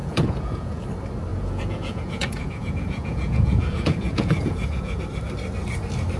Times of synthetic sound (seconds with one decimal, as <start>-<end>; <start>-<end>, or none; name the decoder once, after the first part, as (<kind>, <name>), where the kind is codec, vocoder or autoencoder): 0.0-0.8 (vocoder, Vocos); 1.3-5.0